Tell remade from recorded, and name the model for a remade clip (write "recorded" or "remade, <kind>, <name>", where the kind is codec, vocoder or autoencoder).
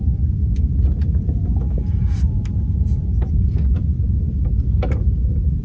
recorded